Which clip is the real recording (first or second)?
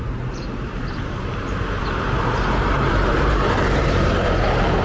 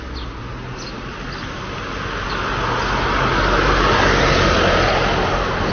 second